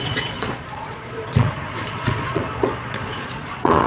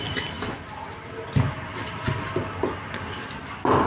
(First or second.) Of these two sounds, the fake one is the first